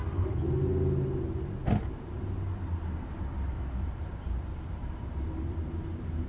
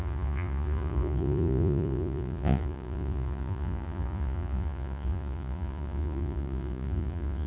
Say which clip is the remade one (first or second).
second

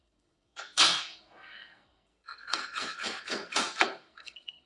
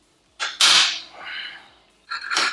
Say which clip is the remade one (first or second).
first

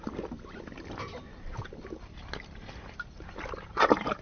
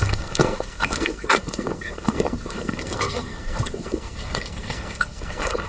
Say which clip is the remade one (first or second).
second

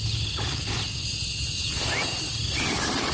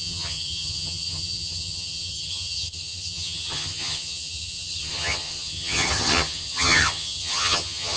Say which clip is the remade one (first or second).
second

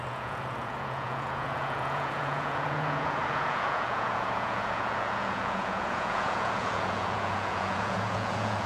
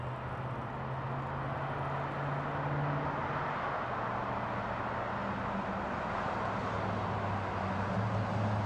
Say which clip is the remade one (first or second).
first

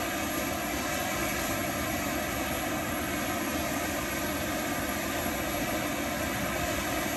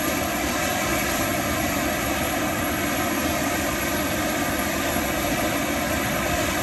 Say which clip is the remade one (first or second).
second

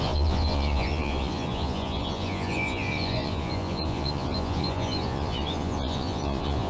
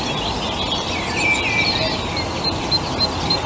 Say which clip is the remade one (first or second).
first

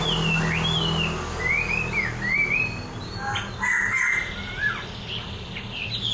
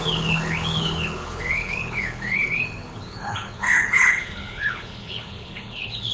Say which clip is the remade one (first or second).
second